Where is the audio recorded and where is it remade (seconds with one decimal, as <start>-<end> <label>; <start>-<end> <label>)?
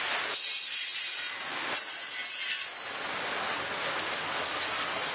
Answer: 0.0-5.1 recorded